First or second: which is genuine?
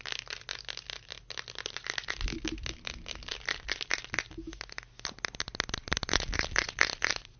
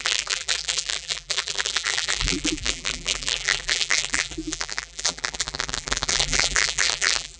first